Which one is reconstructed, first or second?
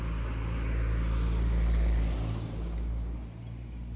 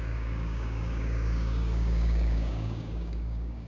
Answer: second